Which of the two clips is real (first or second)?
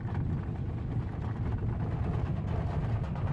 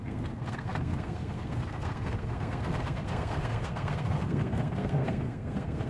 first